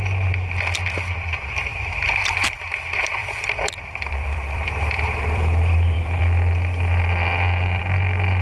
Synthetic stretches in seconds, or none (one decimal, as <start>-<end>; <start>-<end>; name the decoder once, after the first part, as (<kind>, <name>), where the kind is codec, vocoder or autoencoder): 1.7-2.6 (vocoder, BigVGAN v2); 3.2-6.2